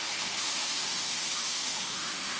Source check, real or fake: fake